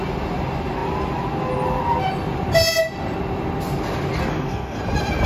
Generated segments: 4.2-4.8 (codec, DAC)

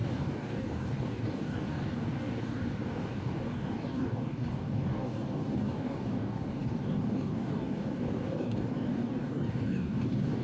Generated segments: 0.0-10.4 (codec, DAC)

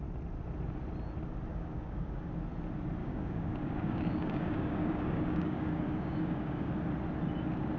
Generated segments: 1.5-2.3 (codec, DAC); 3.0-6.7

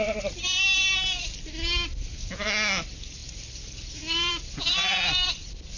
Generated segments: none

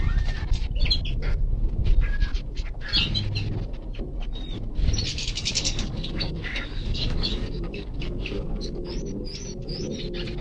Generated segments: 5.1-8.9 (codec, DAC)

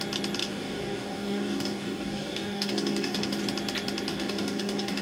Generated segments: 0.4-3.4 (codec, DAC); 4.1-5.0